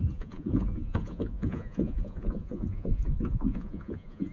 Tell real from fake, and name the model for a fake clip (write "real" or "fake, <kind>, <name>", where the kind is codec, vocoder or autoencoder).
fake, vocoder, Vocos